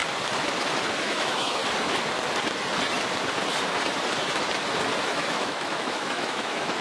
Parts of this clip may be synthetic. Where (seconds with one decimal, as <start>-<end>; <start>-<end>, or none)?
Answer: 1.0-1.6; 5.0-6.8